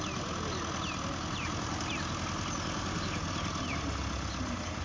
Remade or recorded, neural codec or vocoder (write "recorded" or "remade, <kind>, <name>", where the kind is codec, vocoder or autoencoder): recorded